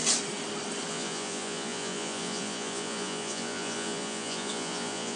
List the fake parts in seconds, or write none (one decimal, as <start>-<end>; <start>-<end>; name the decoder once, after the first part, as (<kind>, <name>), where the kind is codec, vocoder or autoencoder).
0.9-5.2 (vocoder, Vocos)